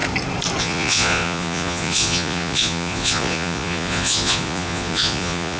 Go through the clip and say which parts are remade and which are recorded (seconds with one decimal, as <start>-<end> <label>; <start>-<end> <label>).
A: 0.0-0.6 recorded; 0.6-5.6 remade